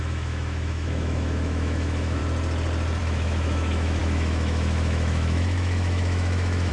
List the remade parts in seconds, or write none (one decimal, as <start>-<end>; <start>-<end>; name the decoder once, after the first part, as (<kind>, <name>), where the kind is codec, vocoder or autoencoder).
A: 0.0-2.2 (autoencoder, DAC-VAE); 3.0-6.7